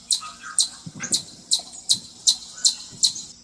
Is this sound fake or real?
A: real